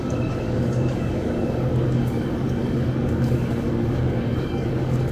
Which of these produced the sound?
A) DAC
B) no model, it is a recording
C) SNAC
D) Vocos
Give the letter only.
A